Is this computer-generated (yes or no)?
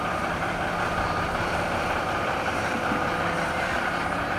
yes